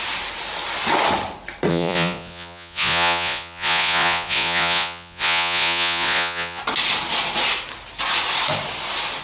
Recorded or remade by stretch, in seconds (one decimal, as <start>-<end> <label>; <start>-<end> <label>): 0.0-1.7 recorded; 1.7-6.6 remade; 6.6-9.2 recorded